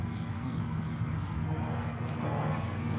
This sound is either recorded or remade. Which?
remade